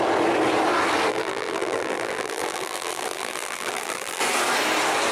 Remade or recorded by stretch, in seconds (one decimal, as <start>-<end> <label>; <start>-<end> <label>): 0.0-1.1 recorded; 1.1-4.2 remade; 4.2-5.1 recorded